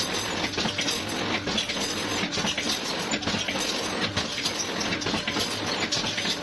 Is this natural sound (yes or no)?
yes